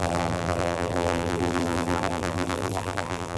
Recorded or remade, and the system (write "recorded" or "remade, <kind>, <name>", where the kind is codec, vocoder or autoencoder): remade, vocoder, BigVGAN v2